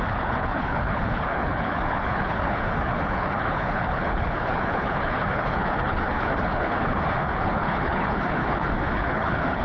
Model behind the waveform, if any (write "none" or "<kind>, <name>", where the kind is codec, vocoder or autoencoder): codec, HILCodec